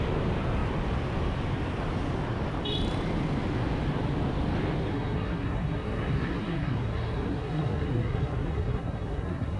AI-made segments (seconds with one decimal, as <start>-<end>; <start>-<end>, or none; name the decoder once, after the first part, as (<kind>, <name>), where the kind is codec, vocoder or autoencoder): 4.9-9.6 (codec, SNAC)